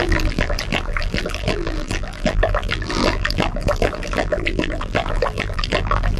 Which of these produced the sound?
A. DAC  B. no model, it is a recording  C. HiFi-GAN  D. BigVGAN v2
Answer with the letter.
D